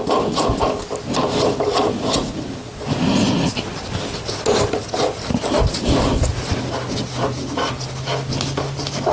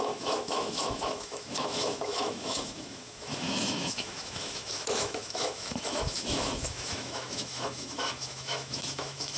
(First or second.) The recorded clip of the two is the first